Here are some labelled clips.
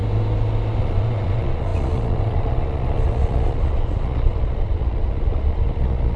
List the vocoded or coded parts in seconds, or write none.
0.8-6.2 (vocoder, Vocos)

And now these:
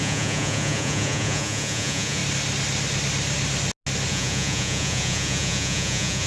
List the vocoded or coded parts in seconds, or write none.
0.0-2.2 (vocoder, Vocos); 4.1-6.3

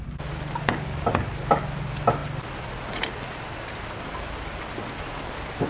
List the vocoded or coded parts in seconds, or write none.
none

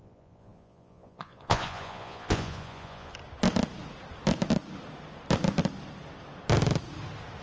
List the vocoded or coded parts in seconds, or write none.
0.0-3.1 (vocoder, Vocos)

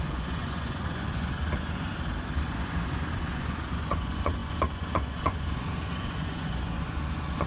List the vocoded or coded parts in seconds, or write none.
0.0-1.9 (vocoder, Vocos); 2.4-7.5

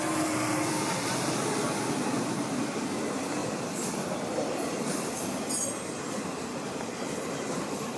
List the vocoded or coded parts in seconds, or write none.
none

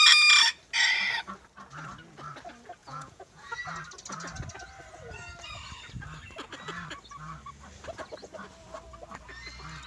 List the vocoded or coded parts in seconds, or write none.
2.8-3.6 (vocoder, Vocos)